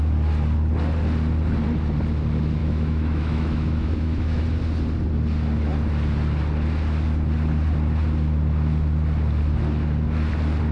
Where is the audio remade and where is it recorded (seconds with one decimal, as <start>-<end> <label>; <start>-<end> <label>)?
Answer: 0.0-2.6 recorded; 2.6-4.4 remade; 4.4-10.7 recorded